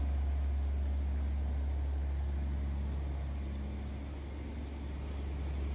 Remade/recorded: recorded